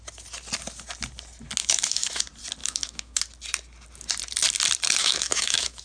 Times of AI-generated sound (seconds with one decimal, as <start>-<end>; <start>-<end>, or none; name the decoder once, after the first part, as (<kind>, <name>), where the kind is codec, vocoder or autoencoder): 1.6-2.2 (autoencoder, DAC-VAE); 2.6-3.2; 5.0-5.8

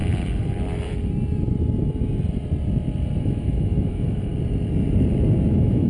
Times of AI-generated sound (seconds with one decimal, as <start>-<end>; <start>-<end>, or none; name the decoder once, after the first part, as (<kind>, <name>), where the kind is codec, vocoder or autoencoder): 3.2-4.3 (autoencoder, DAC-VAE); 5.5-5.9

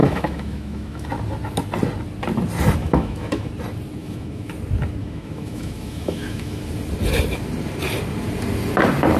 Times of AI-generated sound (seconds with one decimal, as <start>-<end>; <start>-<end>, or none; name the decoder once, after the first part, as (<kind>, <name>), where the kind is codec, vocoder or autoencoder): 0.0-1.1 (autoencoder, DAC-VAE); 2.8-3.5; 4.0-4.5; 5.0-6.6